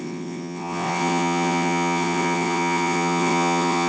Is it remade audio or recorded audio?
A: remade